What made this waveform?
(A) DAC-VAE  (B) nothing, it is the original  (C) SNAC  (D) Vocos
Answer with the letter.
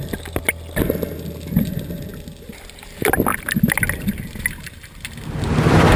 B